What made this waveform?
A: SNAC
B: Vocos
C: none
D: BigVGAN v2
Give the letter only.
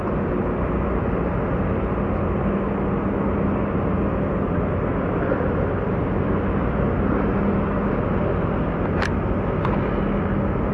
C